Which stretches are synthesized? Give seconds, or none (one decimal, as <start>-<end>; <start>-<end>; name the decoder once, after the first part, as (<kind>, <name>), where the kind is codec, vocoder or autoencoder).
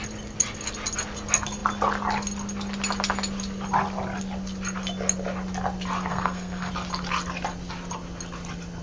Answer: 6.1-6.7 (codec, SNAC)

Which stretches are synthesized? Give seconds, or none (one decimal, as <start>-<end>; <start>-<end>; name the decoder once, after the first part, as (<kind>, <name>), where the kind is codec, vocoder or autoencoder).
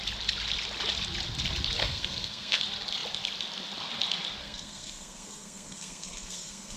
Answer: 1.8-2.6 (codec, SNAC); 4.4-6.8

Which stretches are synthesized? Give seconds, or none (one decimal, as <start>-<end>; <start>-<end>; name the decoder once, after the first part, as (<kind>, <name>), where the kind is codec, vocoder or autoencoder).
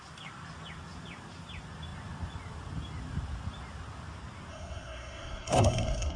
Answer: 4.5-6.2 (codec, SNAC)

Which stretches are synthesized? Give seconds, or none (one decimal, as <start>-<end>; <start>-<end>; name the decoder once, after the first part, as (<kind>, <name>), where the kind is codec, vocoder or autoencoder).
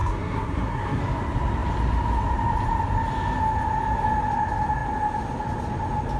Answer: 0.0-1.0 (codec, SNAC)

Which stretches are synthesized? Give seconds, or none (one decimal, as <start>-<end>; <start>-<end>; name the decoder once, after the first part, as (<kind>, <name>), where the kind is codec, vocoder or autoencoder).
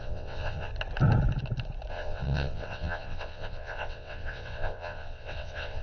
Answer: 0.0-0.7 (vocoder, WaveNeXt); 1.9-5.8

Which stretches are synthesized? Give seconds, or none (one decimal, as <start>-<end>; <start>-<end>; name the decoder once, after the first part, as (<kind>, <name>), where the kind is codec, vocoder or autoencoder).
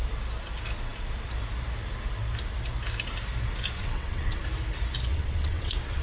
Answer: 3.8-4.4 (vocoder, WaveNeXt); 5.1-6.0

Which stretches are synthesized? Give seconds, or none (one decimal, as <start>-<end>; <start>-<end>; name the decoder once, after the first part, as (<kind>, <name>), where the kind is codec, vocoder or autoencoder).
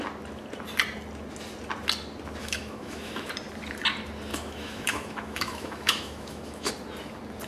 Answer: 2.4-3.3 (autoencoder, DAC-VAE); 4.3-6.7